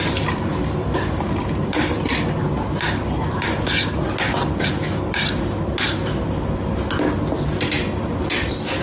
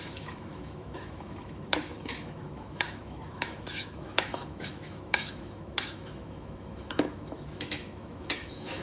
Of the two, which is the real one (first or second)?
first